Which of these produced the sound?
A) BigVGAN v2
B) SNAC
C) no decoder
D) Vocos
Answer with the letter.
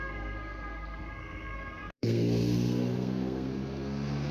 B